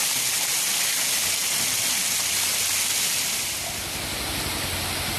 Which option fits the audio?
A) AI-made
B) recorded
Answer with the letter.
B